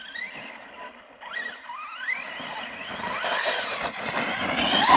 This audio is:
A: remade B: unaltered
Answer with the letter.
B